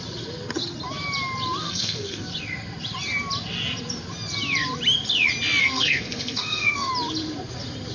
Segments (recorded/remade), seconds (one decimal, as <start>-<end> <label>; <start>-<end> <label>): 0.0-1.6 recorded; 1.6-2.3 remade; 2.3-5.6 recorded; 5.6-6.9 remade; 6.9-7.9 recorded